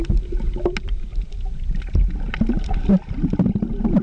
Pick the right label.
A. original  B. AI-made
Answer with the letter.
A